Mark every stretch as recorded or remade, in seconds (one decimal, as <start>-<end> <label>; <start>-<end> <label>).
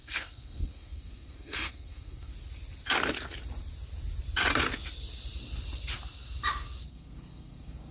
0.0-2.3 remade; 2.3-6.9 recorded; 6.9-7.9 remade